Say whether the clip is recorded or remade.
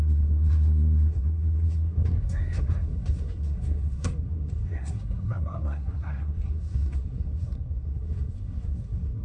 remade